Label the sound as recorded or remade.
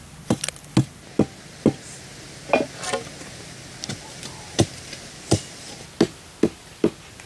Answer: recorded